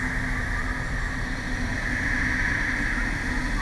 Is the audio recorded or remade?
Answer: recorded